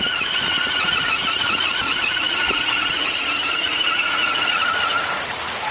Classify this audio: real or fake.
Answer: fake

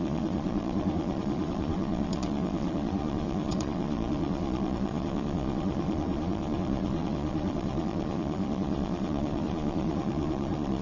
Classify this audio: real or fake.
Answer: fake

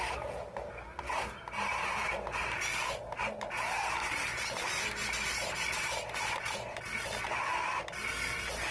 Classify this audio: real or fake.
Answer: real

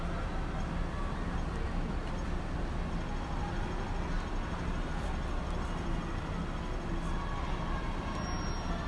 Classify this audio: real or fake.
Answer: real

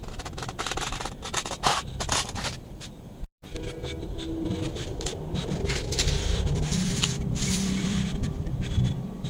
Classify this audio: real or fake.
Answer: fake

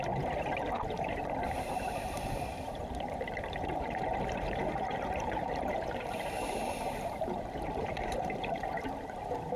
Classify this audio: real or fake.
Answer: fake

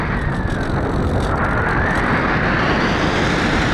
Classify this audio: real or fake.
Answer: real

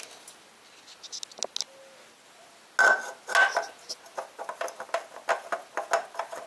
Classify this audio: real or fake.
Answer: real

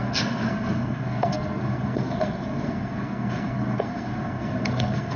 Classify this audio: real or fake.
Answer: fake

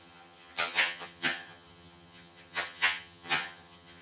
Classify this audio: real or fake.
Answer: fake